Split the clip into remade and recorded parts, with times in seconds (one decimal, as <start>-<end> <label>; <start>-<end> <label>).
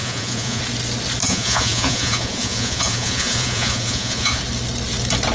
0.0-0.6 remade; 0.6-1.2 recorded; 1.2-4.4 remade; 4.4-5.3 recorded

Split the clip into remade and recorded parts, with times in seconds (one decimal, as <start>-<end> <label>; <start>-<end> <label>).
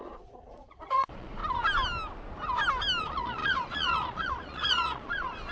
0.0-1.4 remade; 1.4-3.0 recorded; 3.0-5.5 remade